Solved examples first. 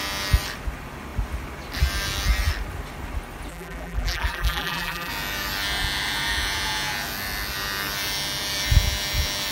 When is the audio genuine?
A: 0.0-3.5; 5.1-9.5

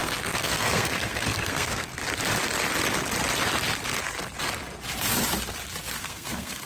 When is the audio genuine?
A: 2.0-6.0

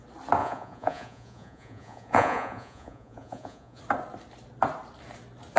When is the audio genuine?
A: 0.0-0.4; 3.8-5.6

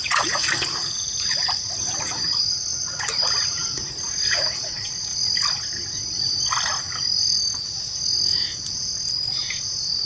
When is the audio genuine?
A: 3.8-4.3; 5.1-10.1

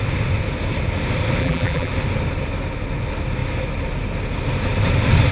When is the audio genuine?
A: 0.0-1.4; 1.9-5.3

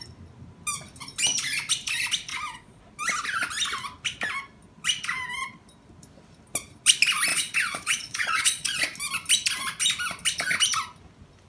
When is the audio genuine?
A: 0.0-2.3; 2.8-7.3; 8.8-11.5

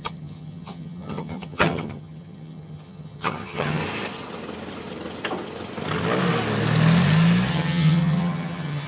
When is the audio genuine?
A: 3.8-7.5